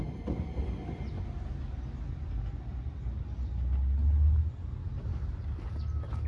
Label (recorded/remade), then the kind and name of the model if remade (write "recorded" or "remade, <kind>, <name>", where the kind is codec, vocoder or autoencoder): recorded